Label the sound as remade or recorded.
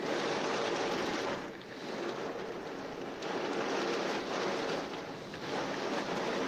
recorded